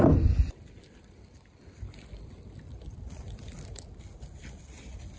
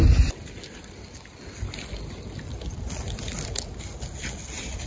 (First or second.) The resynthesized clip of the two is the first